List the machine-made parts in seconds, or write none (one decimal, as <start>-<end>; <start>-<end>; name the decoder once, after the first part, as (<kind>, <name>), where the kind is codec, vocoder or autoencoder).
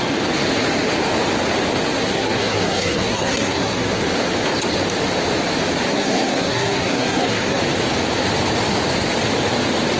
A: 2.0-4.0 (codec, SNAC); 5.9-7.6